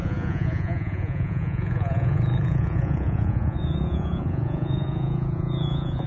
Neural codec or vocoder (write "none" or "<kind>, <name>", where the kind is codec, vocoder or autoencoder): vocoder, Vocos